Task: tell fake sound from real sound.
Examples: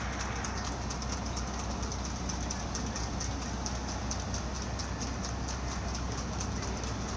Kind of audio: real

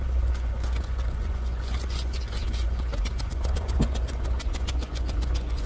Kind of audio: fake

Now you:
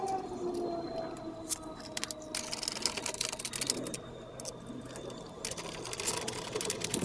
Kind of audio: real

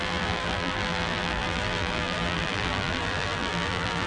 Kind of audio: fake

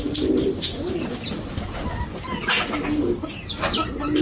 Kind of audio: real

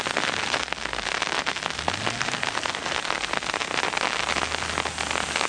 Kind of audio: real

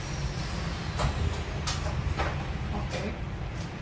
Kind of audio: real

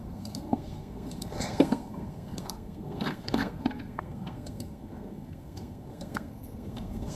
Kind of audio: fake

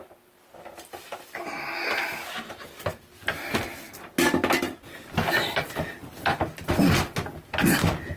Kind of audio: real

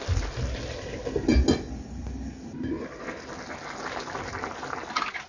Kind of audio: real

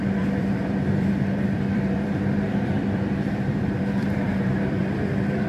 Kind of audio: fake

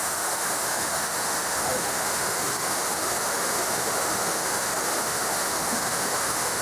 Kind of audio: fake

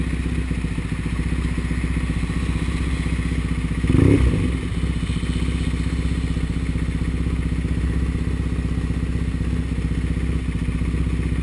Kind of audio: real